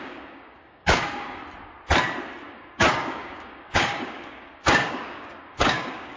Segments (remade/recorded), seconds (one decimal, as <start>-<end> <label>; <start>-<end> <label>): 0.0-1.4 remade; 1.4-2.5 recorded; 2.5-6.2 remade